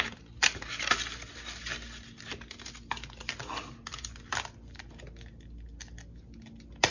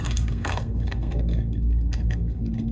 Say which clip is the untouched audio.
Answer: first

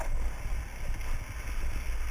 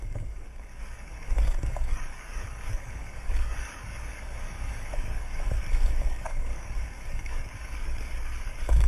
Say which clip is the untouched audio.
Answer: first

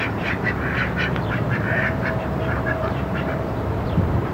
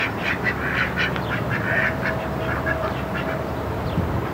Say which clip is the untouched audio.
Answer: second